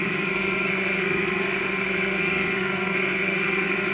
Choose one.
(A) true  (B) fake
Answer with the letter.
B